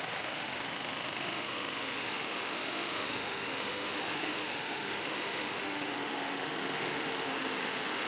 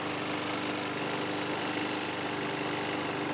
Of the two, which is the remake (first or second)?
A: first